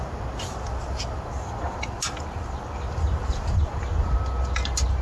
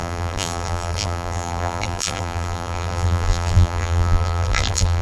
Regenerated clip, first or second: second